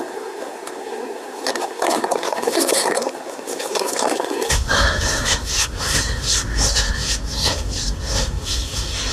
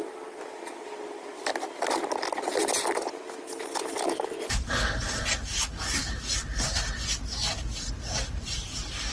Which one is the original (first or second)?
second